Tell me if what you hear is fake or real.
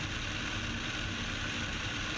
real